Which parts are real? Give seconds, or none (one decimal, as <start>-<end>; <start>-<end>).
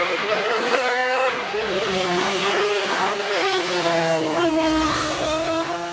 none